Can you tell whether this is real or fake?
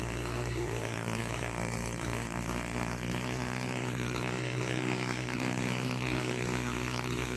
fake